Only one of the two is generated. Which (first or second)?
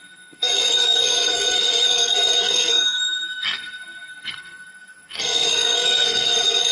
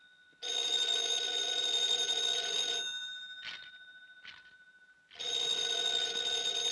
first